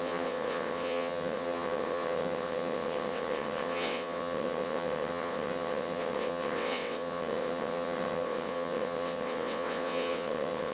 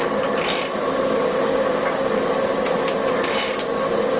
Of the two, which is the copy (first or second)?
first